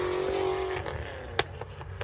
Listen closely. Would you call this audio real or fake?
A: real